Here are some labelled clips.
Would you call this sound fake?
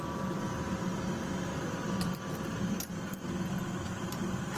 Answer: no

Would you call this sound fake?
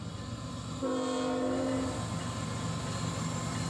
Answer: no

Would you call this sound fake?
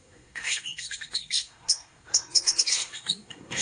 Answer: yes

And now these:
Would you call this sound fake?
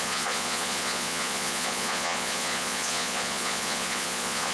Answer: yes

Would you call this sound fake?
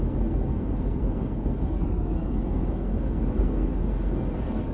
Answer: yes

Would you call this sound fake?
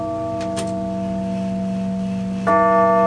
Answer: no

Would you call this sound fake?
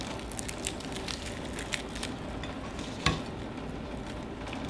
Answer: no